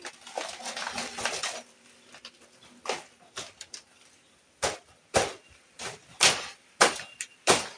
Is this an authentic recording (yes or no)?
yes